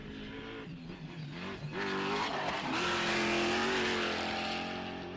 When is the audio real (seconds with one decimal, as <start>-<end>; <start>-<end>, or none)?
0.0-5.2